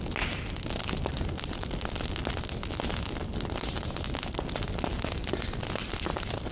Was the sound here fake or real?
real